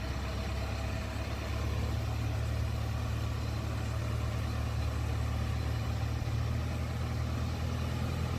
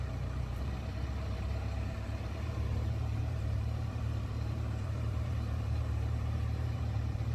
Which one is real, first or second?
first